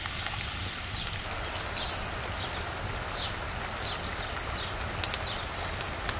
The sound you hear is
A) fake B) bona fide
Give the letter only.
B